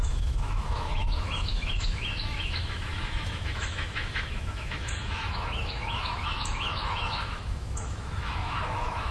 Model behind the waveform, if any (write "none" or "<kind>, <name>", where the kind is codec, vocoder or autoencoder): autoencoder, DAC-VAE